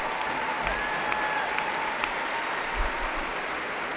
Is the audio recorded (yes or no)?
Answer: yes